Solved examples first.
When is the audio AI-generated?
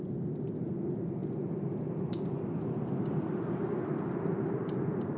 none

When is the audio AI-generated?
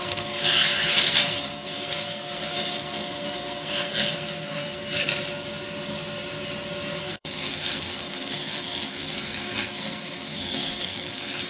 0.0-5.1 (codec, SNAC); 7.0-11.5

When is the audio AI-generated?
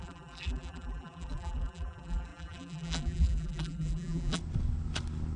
0.0-4.4 (vocoder, BigVGAN v2)